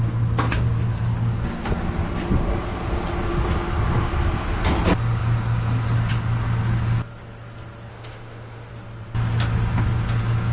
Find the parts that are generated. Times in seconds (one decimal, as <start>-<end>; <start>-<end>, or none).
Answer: 7.9-8.7